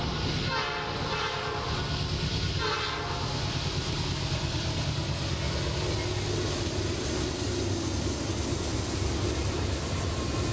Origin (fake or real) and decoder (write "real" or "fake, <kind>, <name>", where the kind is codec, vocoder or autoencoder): real